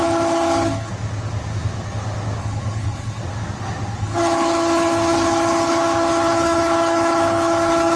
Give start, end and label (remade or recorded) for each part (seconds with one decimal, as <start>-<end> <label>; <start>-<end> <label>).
0.0-0.9 remade; 0.9-2.4 recorded; 2.4-3.2 remade; 3.2-4.0 recorded; 4.0-8.0 remade